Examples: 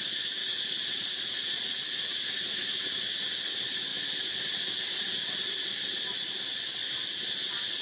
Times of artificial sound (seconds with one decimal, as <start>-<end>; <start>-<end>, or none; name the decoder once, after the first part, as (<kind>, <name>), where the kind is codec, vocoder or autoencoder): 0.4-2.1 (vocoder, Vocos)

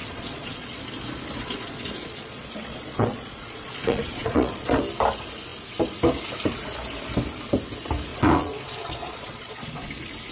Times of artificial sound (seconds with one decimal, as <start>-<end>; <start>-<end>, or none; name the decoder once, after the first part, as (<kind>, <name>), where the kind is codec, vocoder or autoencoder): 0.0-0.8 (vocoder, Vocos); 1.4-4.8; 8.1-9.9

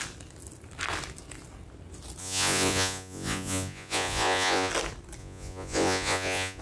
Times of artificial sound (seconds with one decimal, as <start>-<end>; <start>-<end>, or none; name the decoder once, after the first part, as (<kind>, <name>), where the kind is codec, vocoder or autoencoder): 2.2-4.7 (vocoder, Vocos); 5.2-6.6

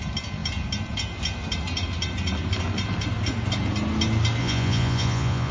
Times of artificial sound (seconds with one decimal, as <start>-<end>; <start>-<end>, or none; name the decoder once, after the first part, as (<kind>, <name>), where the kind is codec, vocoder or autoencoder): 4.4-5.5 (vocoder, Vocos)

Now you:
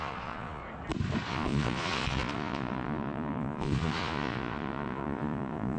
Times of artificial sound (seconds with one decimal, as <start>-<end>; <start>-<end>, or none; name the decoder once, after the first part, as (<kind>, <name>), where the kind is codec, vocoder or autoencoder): 0.0-0.6 (vocoder, Vocos); 1.3-5.8